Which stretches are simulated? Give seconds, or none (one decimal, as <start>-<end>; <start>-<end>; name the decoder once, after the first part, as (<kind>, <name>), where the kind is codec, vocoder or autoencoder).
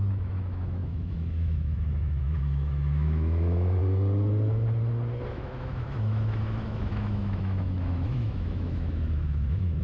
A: 0.0-3.8 (autoencoder, DAC-VAE); 5.3-9.8